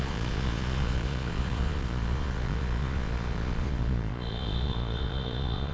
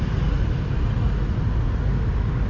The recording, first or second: second